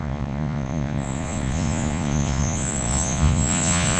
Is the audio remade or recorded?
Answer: remade